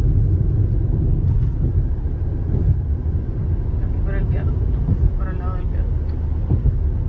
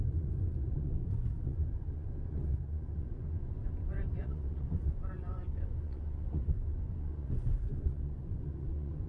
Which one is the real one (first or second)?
first